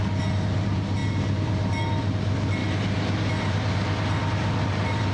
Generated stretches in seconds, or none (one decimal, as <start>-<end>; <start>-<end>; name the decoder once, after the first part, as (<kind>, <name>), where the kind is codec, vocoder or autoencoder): none